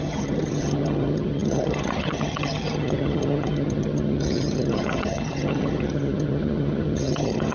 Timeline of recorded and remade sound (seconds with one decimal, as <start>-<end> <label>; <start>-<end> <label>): 0.0-7.5 remade